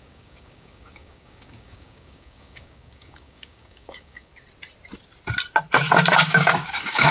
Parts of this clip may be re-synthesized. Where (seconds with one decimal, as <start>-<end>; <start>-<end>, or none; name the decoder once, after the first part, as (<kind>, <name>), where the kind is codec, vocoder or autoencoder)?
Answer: 0.0-4.3 (codec, DAC); 6.2-7.1